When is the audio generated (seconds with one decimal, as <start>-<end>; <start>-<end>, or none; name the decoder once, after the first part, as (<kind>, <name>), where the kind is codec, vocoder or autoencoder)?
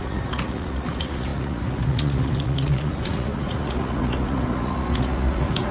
0.0-5.7 (vocoder, Vocos)